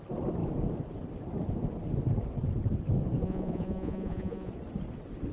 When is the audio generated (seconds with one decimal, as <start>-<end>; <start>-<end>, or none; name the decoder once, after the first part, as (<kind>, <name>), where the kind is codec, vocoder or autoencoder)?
3.2-4.5 (vocoder, Vocos)